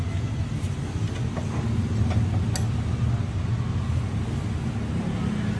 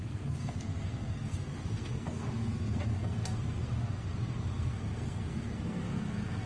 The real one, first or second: first